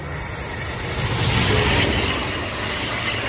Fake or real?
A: real